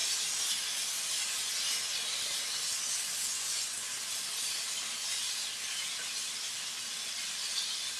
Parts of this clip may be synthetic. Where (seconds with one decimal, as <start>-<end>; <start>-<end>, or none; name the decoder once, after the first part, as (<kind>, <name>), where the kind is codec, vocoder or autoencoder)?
3.2-3.9 (vocoder, Vocos)